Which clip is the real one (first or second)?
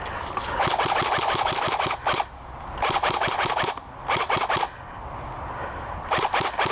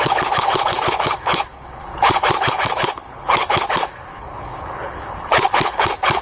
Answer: first